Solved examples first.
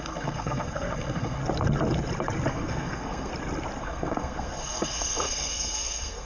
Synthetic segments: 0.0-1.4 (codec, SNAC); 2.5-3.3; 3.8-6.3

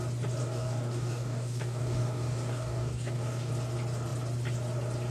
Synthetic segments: 0.4-3.5 (codec, DAC)

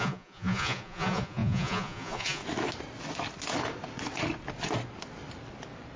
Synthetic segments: 0.0-2.4 (vocoder, Vocos)

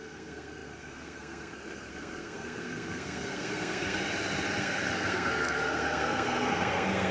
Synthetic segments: 0.0-4.0 (codec, SNAC); 4.6-7.1

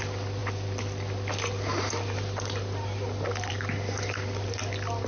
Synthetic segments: none